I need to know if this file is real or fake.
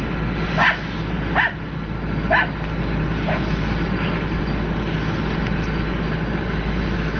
real